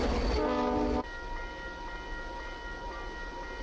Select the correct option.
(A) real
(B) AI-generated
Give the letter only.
A